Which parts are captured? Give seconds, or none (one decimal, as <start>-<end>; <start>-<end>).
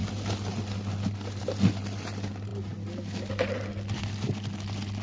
0.0-5.0